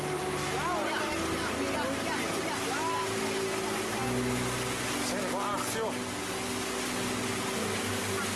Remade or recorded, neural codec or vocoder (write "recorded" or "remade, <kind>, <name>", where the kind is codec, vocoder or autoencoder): recorded